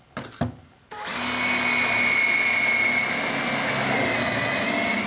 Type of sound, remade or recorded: recorded